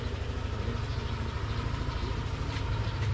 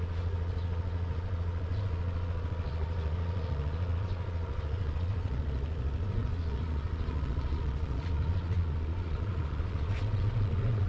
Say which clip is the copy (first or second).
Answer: second